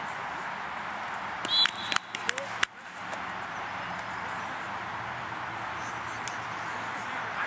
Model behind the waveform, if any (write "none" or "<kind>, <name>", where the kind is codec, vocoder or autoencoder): none